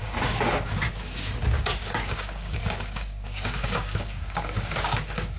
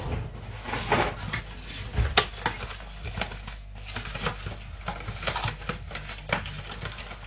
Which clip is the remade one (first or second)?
first